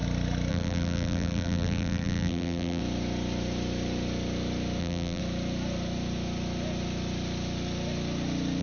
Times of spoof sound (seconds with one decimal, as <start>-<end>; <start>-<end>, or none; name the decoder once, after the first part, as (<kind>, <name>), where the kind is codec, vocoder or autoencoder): 0.5-2.8 (vocoder, BigVGAN v2); 4.8-5.2